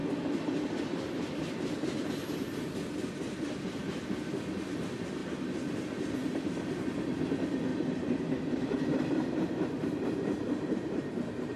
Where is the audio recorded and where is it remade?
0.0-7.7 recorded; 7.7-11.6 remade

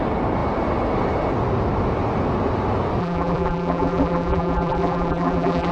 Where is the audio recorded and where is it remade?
0.0-3.0 recorded; 3.0-5.7 remade